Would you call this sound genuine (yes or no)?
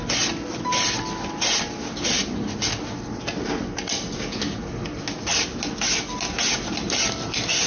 yes